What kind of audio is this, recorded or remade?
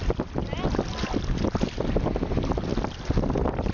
recorded